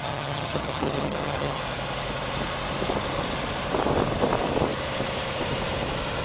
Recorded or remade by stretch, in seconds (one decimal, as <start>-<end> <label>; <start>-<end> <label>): 0.0-1.6 remade; 1.6-6.2 recorded